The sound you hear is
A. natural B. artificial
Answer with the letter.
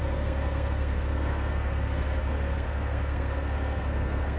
B